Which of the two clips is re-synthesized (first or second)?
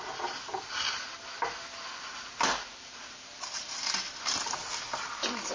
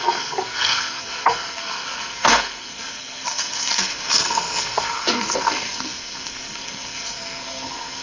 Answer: second